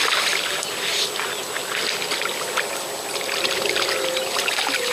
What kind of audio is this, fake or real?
real